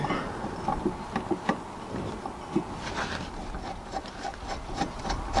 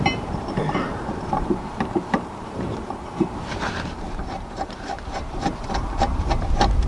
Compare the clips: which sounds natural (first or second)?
first